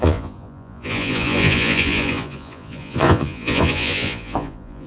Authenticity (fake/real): fake